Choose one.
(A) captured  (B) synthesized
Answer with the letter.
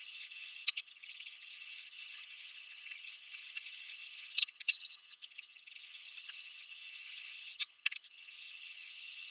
B